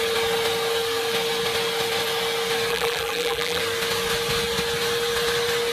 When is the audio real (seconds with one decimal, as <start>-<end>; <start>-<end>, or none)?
0.0-2.7; 3.6-5.7